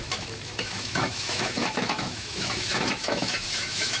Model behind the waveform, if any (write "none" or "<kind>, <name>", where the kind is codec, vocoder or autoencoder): autoencoder, DAC-VAE